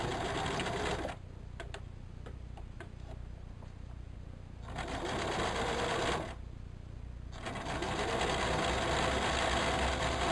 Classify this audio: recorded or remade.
recorded